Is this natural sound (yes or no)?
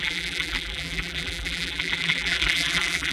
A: no